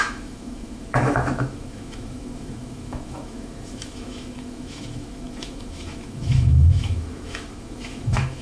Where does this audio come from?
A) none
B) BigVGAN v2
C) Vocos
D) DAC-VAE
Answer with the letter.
D